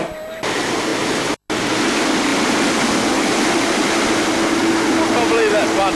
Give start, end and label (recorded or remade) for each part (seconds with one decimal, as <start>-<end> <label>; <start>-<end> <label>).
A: 0.0-5.9 recorded